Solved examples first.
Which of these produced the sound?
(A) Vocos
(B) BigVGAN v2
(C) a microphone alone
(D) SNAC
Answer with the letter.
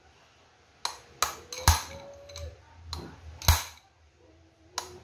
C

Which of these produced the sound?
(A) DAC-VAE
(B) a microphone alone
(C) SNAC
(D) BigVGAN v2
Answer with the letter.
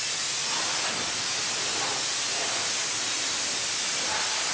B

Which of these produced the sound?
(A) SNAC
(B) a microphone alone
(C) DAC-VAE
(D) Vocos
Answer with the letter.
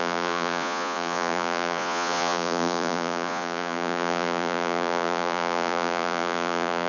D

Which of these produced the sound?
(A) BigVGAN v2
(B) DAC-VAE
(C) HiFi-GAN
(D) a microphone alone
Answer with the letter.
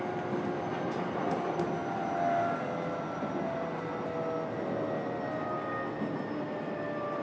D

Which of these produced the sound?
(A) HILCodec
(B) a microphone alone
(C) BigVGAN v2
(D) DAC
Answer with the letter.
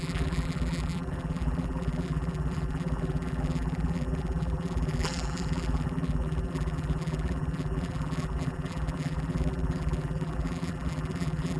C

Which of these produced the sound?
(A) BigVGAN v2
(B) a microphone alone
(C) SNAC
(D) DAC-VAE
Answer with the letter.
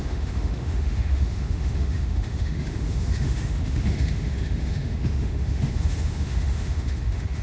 D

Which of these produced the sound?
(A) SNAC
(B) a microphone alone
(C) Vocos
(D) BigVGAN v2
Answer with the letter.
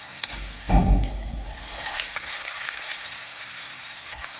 A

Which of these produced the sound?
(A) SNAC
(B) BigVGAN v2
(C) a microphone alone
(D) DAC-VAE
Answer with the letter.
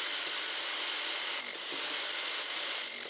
C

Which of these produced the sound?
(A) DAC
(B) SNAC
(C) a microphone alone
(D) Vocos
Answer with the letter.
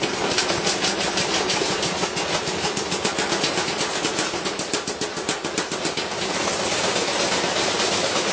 C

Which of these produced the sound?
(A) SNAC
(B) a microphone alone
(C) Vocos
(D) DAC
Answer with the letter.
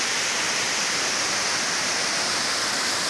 B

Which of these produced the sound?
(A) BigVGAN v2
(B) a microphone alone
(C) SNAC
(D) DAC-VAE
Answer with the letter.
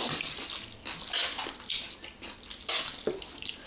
B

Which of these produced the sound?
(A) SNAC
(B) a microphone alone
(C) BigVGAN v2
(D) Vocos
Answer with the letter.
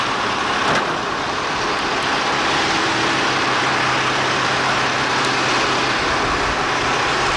B